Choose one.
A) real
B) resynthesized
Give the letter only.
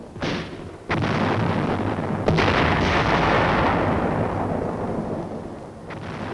A